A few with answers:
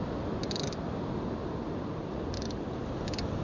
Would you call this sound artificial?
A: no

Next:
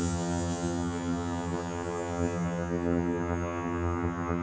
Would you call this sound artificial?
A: yes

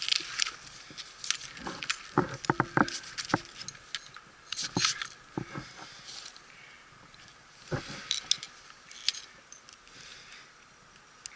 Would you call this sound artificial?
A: no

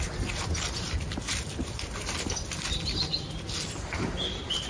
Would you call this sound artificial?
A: no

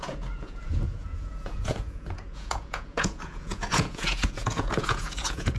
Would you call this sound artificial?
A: yes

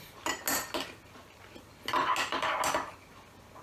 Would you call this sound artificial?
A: no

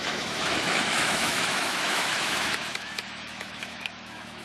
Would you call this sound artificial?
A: yes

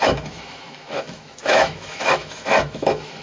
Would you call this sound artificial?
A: yes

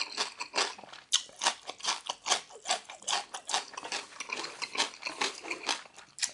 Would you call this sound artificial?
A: no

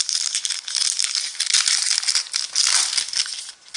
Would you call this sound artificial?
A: no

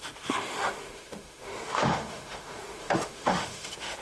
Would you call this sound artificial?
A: yes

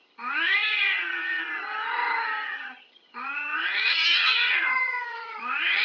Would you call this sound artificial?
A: yes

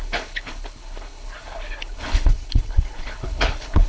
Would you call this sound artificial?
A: yes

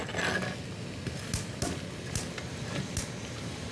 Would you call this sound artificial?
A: no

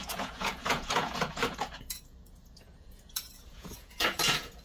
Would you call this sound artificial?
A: yes